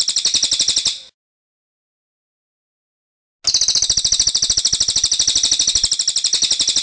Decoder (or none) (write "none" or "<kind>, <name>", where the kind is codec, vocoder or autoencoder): none